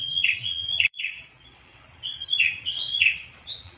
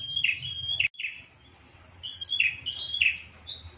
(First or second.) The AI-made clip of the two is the first